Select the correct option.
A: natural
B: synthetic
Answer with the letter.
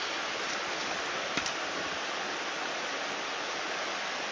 A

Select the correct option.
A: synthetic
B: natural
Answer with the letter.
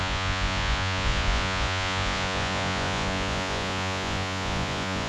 A